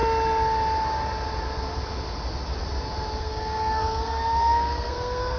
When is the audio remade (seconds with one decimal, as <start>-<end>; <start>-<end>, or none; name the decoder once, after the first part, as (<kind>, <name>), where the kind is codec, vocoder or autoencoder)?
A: 3.2-5.4 (codec, SNAC)